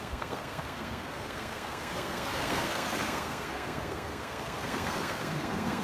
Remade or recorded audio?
remade